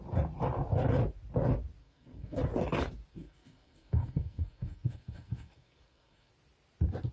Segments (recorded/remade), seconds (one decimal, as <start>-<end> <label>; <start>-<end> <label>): 0.0-1.8 recorded; 1.8-2.4 remade; 2.4-3.1 recorded; 3.1-6.3 remade; 6.3-7.1 recorded